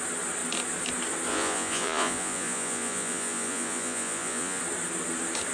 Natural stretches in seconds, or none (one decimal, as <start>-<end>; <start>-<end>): 0.0-1.3; 4.6-5.5